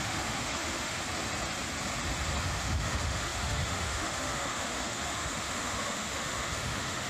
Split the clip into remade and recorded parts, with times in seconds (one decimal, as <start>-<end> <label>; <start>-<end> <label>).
0.0-1.0 remade; 1.0-2.4 recorded; 2.4-7.1 remade